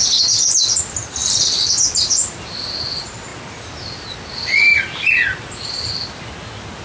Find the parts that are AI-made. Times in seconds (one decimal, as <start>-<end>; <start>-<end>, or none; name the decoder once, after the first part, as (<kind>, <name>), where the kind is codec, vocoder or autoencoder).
none